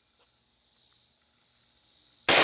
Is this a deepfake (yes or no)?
no